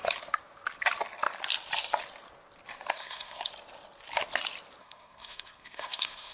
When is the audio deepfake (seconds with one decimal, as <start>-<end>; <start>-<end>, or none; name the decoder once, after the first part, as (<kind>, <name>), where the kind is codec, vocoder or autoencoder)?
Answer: 2.9-3.5 (codec, SNAC); 4.8-6.3